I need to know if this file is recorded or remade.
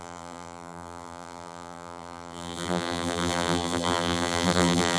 remade